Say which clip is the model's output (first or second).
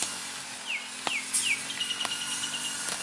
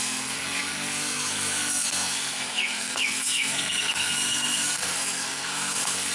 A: second